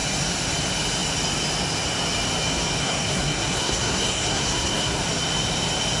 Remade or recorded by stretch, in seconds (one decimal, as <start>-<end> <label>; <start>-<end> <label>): 0.0-2.8 recorded; 2.8-5.0 remade; 5.0-6.0 recorded